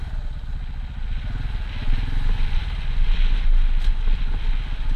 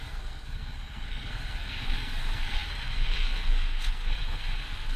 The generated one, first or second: second